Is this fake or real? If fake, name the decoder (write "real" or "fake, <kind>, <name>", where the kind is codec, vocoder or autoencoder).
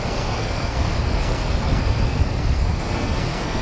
fake, codec, SNAC